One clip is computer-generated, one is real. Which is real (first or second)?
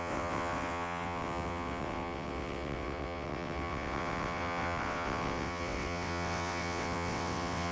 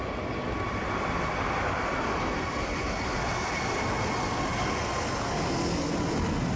second